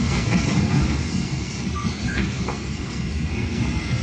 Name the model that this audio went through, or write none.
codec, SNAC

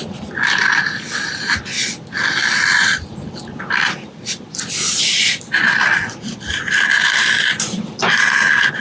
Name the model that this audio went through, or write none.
none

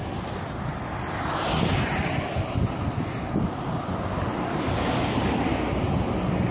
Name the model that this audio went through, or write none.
none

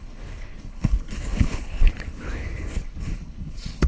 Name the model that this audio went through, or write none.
codec, HILCodec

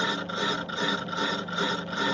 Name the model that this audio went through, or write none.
none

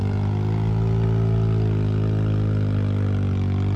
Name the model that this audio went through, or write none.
none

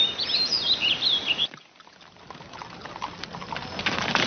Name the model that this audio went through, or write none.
none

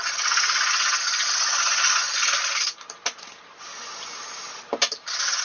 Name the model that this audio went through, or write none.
none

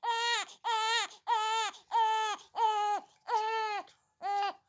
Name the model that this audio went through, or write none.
none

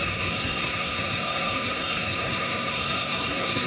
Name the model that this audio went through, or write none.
codec, SNAC